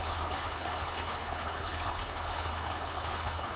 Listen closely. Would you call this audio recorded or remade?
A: remade